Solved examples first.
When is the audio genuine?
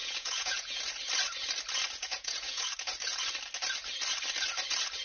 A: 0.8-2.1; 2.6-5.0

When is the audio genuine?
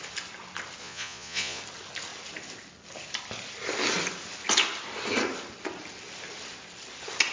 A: 0.0-0.8; 1.6-7.3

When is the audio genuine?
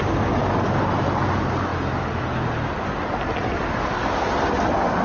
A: 0.0-5.0